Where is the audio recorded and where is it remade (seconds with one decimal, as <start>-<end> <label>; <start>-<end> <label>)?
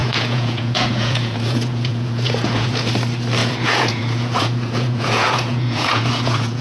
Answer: 0.0-2.9 remade; 2.9-3.4 recorded; 3.4-6.6 remade